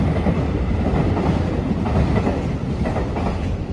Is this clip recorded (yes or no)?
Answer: yes